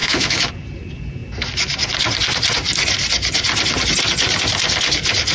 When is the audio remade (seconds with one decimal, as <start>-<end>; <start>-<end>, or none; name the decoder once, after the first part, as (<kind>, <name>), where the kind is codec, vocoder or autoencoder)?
0.0-0.5 (autoencoder, DAC-VAE)